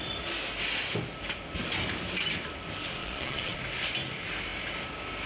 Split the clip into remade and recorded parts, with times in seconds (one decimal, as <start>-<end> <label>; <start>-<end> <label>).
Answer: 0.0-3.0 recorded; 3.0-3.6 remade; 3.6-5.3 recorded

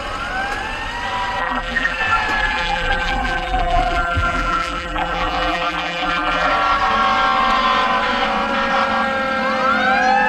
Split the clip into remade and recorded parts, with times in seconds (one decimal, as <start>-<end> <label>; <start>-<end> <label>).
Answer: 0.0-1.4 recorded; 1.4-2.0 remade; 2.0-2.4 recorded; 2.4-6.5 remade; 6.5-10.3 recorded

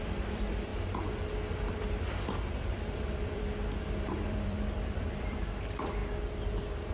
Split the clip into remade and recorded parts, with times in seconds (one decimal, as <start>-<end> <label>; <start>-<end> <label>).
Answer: 0.0-0.7 remade; 0.7-1.5 recorded; 1.5-6.9 remade